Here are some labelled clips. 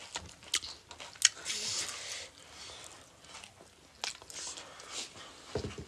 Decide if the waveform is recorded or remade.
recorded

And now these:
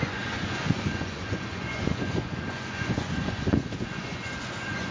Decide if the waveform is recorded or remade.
remade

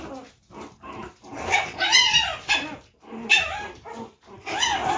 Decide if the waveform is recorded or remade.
recorded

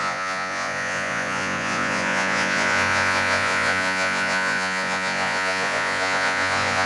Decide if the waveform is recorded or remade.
remade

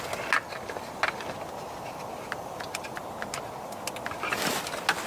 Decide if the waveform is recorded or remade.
recorded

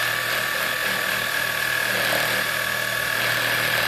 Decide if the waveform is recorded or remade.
recorded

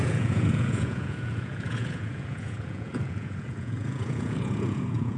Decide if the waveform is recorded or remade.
remade